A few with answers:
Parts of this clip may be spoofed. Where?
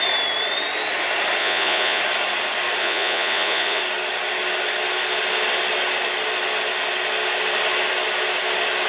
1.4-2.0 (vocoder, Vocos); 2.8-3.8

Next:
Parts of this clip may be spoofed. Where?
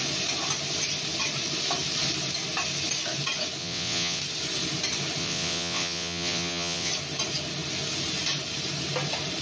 3.6-4.2 (vocoder, WaveNeXt); 5.2-6.9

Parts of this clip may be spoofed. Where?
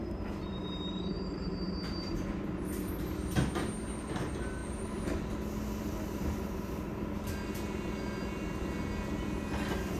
0.0-2.1 (vocoder, BigVGAN v2)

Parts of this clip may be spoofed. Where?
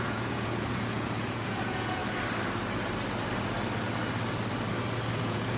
0.0-2.0 (vocoder, Vocos); 5.1-5.6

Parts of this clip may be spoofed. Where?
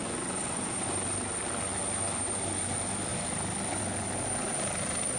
0.0-0.7 (vocoder, Vocos)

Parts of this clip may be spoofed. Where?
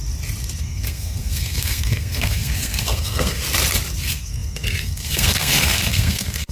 0.6-3.4 (codec, SNAC); 4.0-6.5